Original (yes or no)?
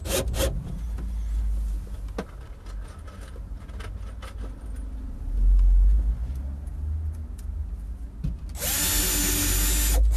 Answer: yes